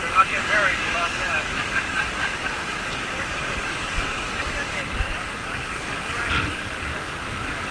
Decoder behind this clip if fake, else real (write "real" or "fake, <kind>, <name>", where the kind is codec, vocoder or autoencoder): fake, codec, DAC